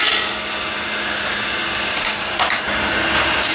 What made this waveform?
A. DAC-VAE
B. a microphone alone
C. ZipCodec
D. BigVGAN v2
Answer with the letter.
B